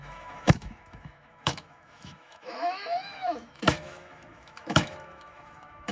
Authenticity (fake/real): fake